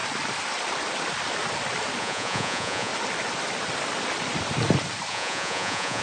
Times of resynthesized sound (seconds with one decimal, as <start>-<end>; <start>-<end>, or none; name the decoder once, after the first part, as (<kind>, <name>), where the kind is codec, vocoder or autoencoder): 2.0-2.9 (vocoder, Vocos); 5.1-6.0